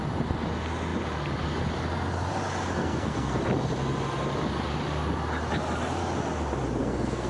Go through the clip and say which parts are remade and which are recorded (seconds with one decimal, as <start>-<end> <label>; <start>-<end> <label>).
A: 0.0-2.8 recorded; 2.8-3.4 remade; 3.4-6.8 recorded; 6.8-7.3 remade